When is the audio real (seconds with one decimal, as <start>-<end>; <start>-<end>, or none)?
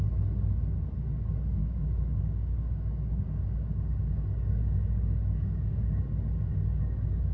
0.0-1.6; 6.0-7.3